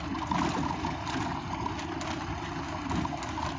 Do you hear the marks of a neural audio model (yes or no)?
no